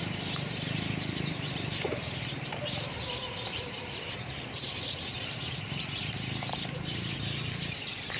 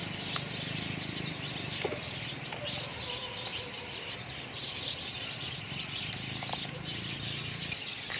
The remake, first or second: first